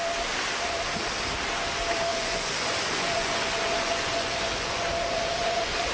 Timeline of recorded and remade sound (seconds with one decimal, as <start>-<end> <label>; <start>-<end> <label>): 0.0-2.1 recorded; 2.1-5.9 remade